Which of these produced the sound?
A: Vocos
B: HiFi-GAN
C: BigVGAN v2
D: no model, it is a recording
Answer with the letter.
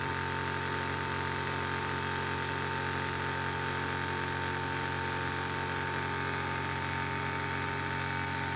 D